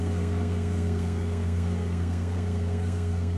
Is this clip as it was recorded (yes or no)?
no